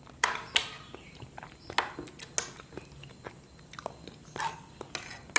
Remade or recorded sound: recorded